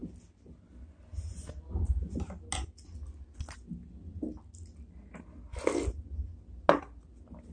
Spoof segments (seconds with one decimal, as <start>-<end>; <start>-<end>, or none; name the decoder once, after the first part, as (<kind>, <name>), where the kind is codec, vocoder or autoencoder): none